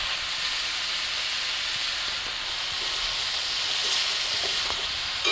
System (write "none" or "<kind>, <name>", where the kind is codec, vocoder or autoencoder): none